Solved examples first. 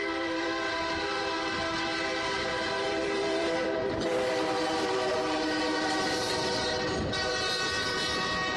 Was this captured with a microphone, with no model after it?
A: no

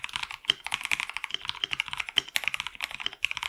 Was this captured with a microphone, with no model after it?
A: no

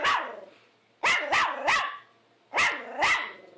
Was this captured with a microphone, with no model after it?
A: yes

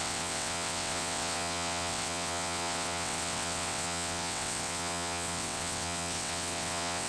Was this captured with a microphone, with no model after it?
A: no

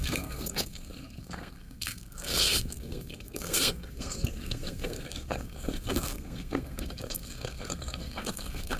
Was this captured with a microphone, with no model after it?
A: no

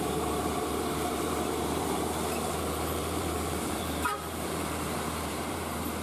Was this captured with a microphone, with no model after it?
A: no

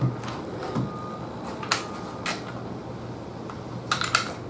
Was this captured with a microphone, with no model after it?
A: yes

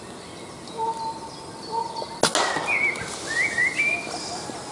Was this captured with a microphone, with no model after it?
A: yes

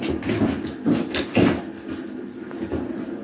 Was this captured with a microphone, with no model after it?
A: yes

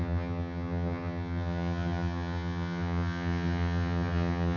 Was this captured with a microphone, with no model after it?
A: no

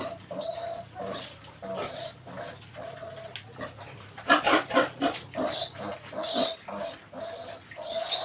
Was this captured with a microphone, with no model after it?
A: yes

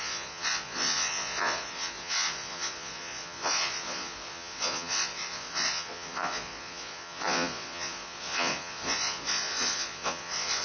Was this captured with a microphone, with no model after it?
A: no